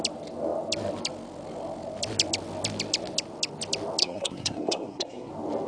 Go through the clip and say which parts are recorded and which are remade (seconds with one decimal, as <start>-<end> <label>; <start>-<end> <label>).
0.0-4.0 recorded; 4.0-5.3 remade; 5.3-5.7 recorded